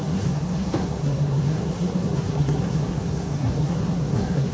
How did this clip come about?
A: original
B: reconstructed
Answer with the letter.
B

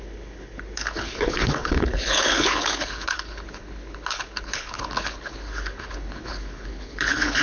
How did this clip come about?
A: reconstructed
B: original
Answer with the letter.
A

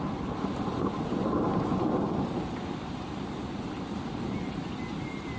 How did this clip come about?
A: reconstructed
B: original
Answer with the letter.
B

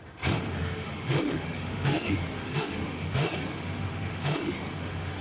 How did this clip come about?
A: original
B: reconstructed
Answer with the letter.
B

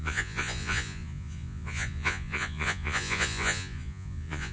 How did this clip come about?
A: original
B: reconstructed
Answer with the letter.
B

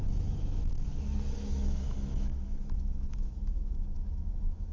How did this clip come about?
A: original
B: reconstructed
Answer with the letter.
B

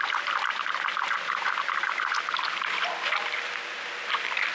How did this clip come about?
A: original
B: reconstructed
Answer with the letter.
A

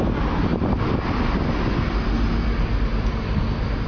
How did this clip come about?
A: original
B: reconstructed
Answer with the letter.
A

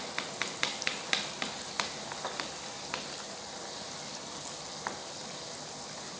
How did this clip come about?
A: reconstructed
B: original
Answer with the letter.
B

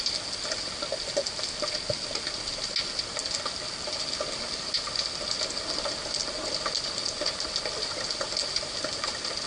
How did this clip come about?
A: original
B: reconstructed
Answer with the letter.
A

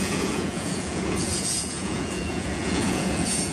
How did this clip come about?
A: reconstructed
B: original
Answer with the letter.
A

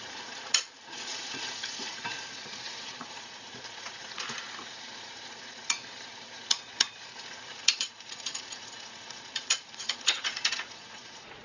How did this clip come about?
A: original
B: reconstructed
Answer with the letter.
B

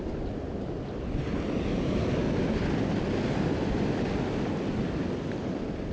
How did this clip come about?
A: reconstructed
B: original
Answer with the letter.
B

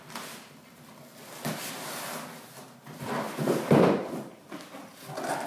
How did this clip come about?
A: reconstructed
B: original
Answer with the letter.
B